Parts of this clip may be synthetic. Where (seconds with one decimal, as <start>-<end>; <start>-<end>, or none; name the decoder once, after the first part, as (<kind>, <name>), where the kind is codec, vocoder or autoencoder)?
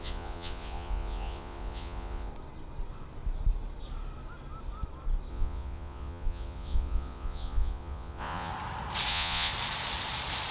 0.0-2.3 (vocoder, Vocos); 5.3-8.5; 9.1-9.5